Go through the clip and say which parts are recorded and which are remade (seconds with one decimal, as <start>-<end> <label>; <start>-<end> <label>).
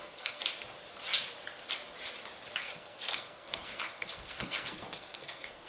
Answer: 0.0-0.4 remade; 0.4-2.6 recorded; 2.6-5.7 remade